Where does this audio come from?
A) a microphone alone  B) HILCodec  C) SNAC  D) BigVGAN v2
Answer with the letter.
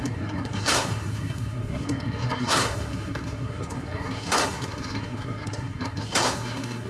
C